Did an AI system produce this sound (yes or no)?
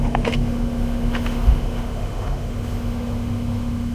yes